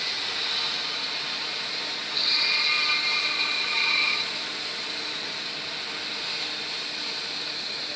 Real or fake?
real